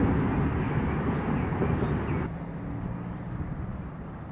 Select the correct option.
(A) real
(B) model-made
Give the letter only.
A